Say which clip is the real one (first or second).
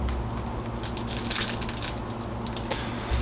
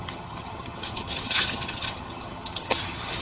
first